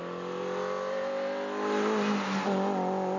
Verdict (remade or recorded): recorded